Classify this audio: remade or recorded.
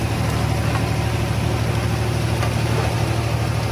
recorded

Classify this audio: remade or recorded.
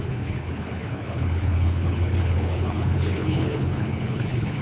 remade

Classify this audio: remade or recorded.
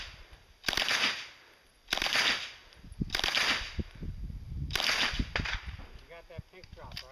recorded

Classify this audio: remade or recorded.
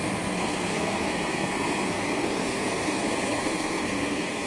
remade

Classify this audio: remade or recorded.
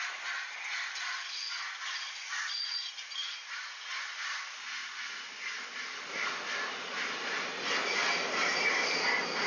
recorded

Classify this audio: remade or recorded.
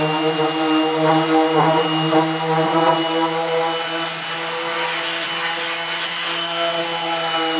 recorded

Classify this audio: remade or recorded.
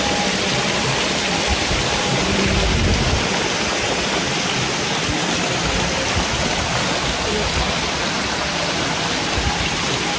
recorded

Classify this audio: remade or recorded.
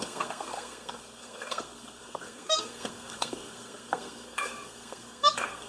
remade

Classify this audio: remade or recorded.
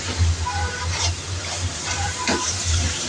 remade